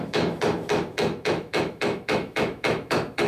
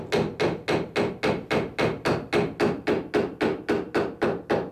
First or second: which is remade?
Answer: first